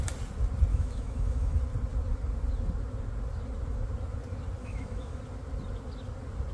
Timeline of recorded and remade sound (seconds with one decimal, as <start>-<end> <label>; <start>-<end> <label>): 0.0-0.7 recorded; 0.7-1.6 remade; 1.6-4.6 recorded; 4.6-5.2 remade; 5.2-6.5 recorded